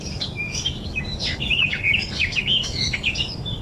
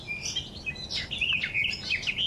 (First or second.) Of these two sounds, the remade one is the first